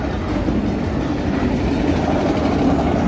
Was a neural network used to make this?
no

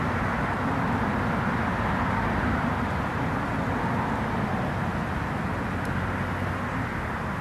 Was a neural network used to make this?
no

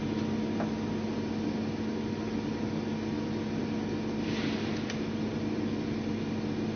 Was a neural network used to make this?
no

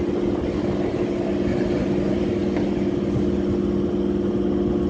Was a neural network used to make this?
no